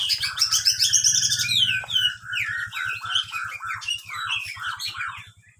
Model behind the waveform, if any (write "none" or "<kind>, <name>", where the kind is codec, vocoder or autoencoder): none